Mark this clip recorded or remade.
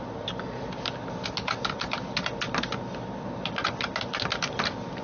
recorded